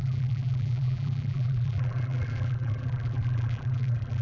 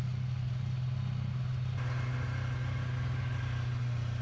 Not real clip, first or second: first